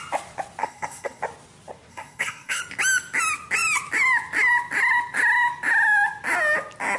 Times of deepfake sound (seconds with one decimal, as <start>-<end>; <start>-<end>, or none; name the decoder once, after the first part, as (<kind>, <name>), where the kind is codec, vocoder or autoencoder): 0.6-1.2 (codec, SNAC); 1.9-2.6